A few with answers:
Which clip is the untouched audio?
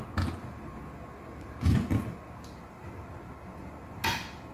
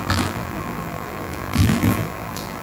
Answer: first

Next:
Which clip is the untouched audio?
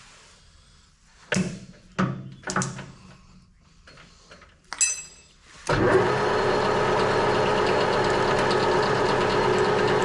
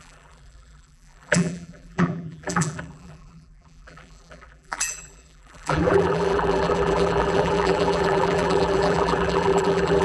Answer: first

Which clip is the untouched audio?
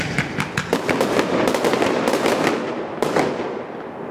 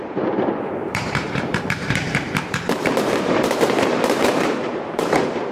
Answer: first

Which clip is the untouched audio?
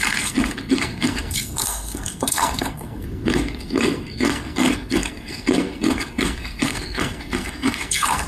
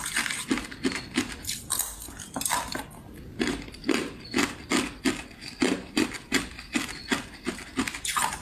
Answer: second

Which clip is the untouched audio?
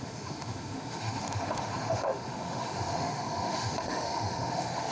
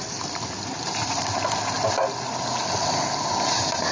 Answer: second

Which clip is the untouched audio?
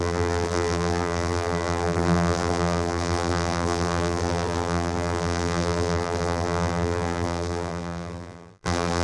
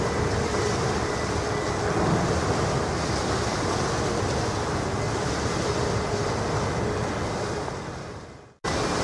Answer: second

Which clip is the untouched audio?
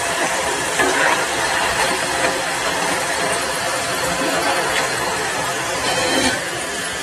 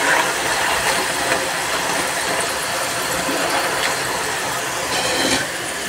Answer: second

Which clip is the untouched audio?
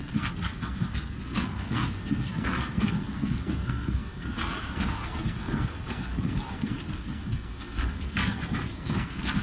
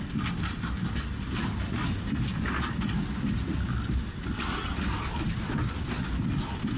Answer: second